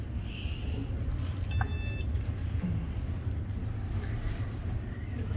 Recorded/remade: recorded